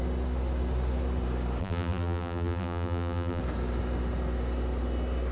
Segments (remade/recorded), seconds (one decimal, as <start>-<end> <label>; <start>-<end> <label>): 0.0-1.6 recorded; 1.6-3.4 remade; 3.4-5.3 recorded